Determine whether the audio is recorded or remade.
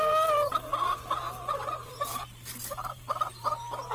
remade